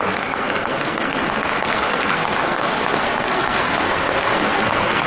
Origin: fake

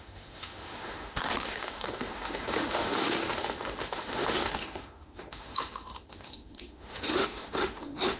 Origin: fake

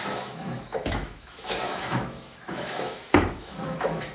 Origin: fake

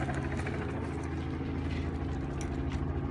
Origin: real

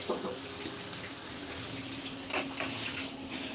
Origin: real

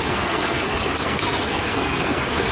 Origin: fake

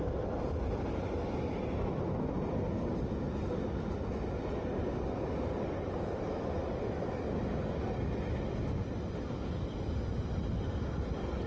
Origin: real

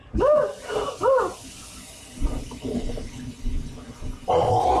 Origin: real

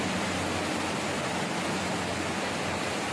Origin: real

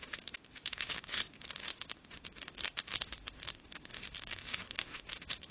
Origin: fake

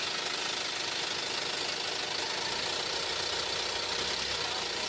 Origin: real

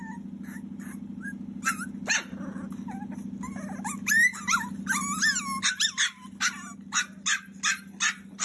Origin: real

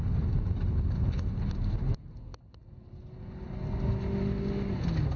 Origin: real